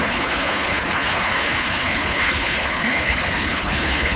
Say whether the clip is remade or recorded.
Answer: remade